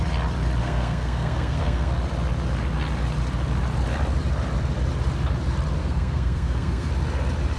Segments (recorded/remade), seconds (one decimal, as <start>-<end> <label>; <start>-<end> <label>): 0.0-0.6 recorded; 0.6-1.9 remade; 1.9-5.8 recorded; 5.8-6.9 remade; 6.9-7.6 recorded